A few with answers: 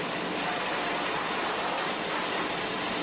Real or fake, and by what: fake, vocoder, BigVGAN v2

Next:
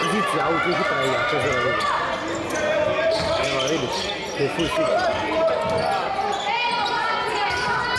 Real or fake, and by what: real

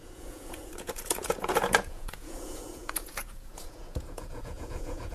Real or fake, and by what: fake, vocoder, Vocos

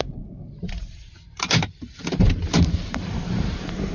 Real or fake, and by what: fake, vocoder, BigVGAN v2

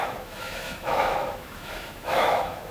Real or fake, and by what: fake, autoencoder, DAC-VAE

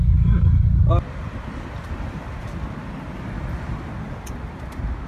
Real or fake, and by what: real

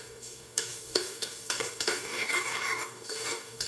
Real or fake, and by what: fake, codec, DAC